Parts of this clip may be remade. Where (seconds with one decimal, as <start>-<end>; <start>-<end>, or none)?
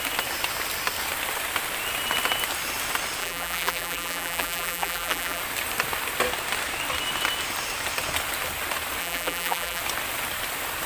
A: 3.2-5.4; 9.0-9.8